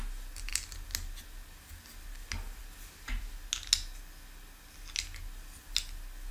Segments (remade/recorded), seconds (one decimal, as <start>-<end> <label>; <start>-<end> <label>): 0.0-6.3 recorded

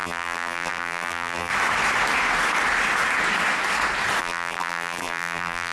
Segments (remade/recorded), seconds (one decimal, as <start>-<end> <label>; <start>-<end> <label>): 0.0-1.5 remade; 1.5-4.2 recorded; 4.2-5.7 remade

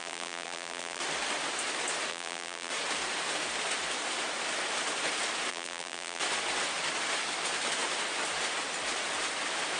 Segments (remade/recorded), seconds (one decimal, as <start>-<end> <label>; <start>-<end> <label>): 0.0-1.0 remade; 1.0-2.1 recorded; 2.1-2.7 remade; 2.7-5.5 recorded; 5.5-6.2 remade; 6.2-9.8 recorded

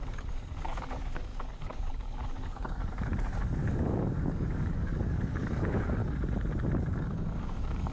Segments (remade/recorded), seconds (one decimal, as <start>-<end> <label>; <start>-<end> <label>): 0.0-6.0 remade; 6.0-7.0 recorded; 7.0-7.9 remade

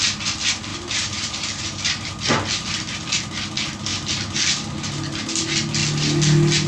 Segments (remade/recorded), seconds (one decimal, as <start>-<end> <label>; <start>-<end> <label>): 0.0-0.7 recorded; 0.7-2.1 remade; 2.1-3.9 recorded; 3.9-4.5 remade; 4.5-6.7 recorded

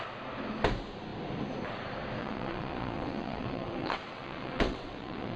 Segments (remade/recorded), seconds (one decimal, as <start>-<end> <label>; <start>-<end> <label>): 0.0-2.2 recorded; 2.2-5.4 remade